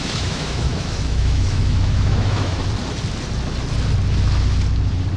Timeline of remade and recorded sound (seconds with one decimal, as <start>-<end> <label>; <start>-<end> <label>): 0.0-2.6 remade; 2.6-5.2 recorded